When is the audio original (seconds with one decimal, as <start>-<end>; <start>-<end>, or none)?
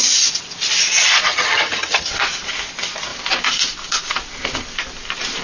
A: 0.0-1.3; 2.1-5.4